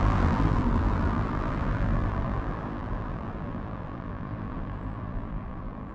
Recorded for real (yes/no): no